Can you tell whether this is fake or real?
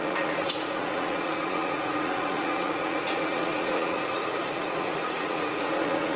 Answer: fake